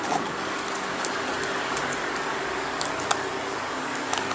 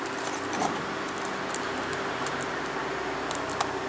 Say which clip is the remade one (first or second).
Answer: first